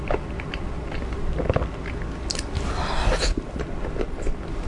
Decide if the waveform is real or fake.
real